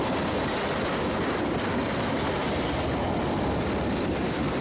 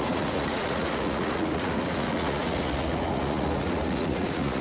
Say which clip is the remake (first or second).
second